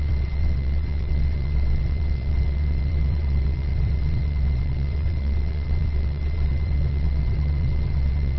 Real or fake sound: fake